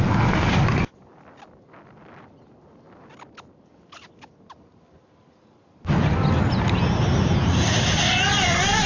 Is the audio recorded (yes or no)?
yes